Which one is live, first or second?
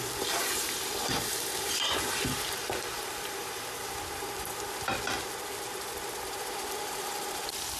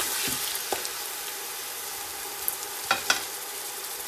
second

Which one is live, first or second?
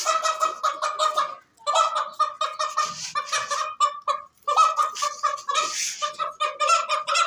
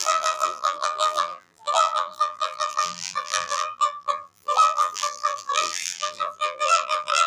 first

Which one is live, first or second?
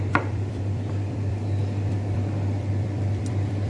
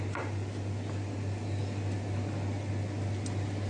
second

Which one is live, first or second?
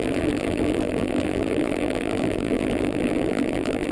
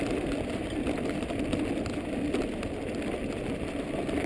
second